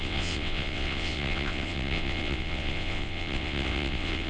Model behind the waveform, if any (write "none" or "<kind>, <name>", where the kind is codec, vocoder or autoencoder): vocoder, WaveNeXt